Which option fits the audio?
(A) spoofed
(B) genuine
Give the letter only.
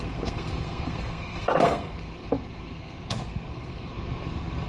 A